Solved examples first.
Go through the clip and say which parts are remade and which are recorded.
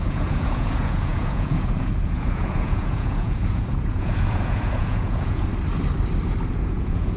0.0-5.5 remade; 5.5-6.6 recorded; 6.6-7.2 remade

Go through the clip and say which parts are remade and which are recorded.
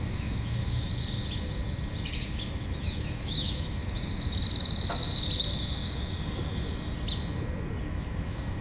0.0-0.9 remade; 0.9-2.5 recorded; 2.5-3.8 remade; 3.8-7.8 recorded; 7.8-8.6 remade